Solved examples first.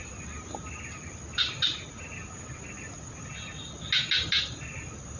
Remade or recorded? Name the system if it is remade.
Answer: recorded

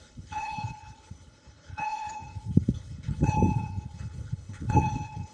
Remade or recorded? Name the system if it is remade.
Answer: remade, codec, HILCodec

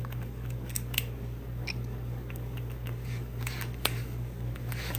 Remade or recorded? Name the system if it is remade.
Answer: remade, codec, DAC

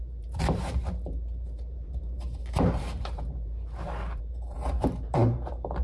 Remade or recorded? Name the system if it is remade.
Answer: remade, vocoder, BigVGAN v2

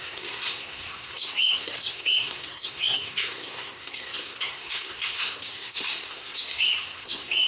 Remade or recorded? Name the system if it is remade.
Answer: remade, codec, SNAC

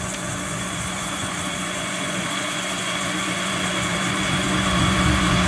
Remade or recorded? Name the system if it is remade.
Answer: remade, vocoder, Vocos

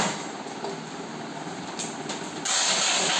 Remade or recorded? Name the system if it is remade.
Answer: recorded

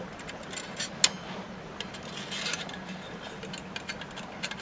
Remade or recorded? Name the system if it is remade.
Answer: recorded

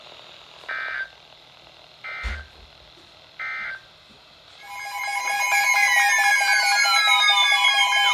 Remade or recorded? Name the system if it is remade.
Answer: recorded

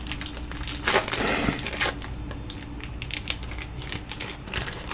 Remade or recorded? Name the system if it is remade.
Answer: recorded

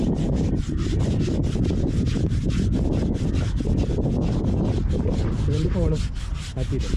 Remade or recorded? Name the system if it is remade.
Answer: recorded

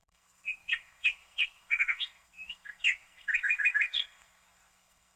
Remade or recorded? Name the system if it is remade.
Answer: remade, codec, SNAC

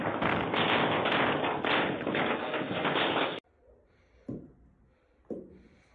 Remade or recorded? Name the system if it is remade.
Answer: recorded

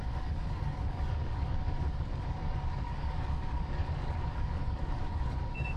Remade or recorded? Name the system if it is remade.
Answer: remade, codec, DAC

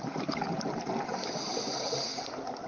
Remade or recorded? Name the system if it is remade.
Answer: recorded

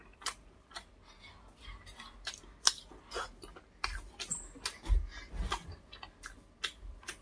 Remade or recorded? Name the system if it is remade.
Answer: recorded